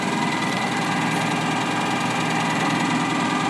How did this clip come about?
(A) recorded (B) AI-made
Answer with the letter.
A